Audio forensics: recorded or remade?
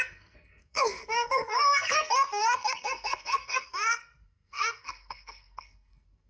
remade